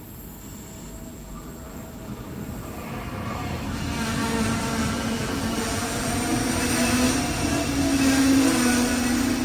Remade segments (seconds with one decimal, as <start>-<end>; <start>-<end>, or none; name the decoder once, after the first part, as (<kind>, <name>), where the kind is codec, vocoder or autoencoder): 1.1-1.8 (vocoder, BigVGAN v2); 4.8-6.1